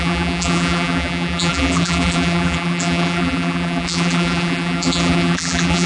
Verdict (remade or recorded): remade